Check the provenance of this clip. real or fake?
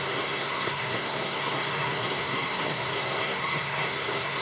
fake